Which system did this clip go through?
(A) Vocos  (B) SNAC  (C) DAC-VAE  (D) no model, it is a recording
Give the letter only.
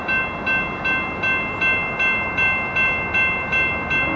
D